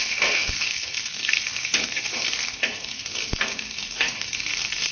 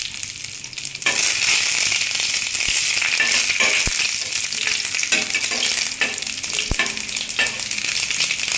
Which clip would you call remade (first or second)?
first